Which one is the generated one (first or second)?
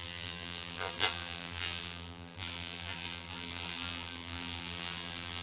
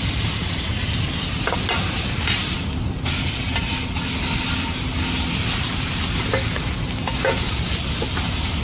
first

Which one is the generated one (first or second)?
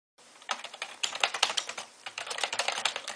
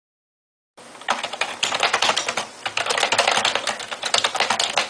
first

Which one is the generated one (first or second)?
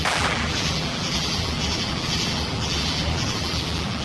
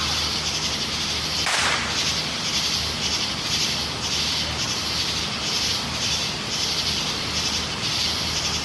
first